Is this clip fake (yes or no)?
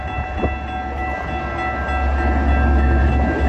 no